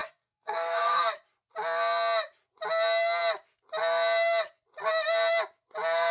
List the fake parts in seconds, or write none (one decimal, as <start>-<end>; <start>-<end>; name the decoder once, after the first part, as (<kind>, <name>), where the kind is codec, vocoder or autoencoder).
0.0-1.0 (codec, SNAC)